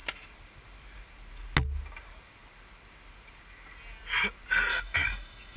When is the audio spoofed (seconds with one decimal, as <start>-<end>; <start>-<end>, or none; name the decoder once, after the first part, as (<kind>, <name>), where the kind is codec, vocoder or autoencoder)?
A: 4.7-5.6 (autoencoder, DAC-VAE)